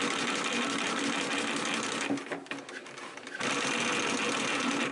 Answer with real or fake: real